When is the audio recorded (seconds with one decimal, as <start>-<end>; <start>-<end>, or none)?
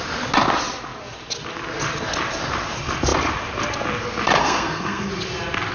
0.0-4.4; 5.1-5.7